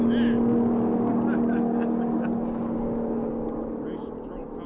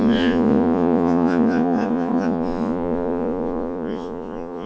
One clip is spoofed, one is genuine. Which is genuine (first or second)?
first